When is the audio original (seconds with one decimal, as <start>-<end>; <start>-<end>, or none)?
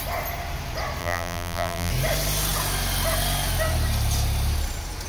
0.0-1.0; 1.9-5.1